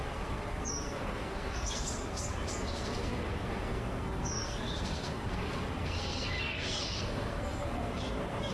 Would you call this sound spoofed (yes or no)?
yes